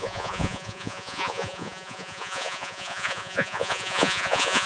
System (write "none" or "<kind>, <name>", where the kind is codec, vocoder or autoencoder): vocoder, Vocos